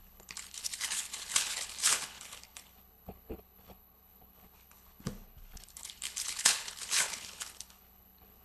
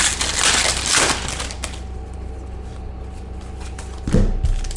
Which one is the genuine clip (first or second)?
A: second